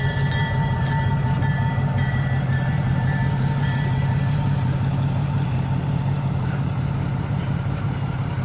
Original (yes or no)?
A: no